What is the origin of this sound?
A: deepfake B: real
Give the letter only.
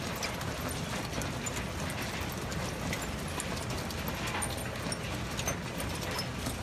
B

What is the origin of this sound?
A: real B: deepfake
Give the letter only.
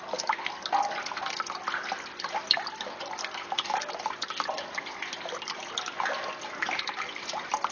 A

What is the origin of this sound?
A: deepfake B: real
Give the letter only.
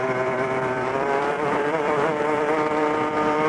A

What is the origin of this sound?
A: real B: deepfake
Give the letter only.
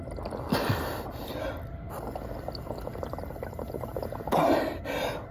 A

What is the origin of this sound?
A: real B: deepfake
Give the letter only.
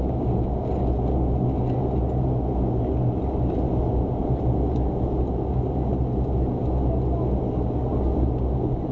A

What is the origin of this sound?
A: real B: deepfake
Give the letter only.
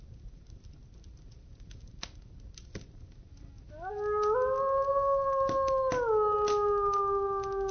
A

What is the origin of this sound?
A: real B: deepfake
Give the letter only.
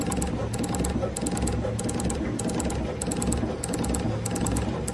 A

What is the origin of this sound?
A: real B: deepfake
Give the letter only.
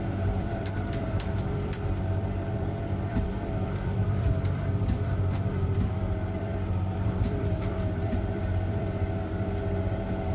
B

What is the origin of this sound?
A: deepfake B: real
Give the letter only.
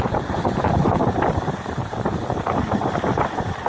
A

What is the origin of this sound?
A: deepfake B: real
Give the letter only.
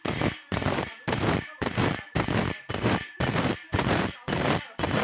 A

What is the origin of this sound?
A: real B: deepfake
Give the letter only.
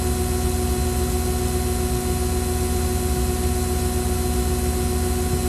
A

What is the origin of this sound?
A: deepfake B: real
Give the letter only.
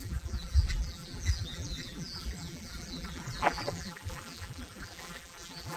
A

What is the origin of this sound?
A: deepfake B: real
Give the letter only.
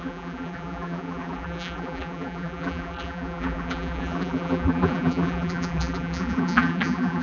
A